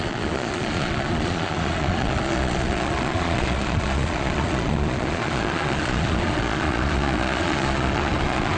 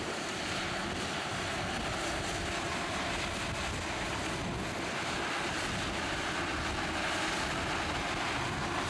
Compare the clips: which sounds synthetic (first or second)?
first